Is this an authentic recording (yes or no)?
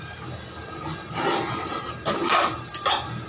yes